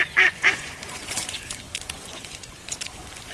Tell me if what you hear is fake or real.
fake